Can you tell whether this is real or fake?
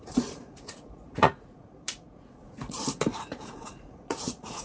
fake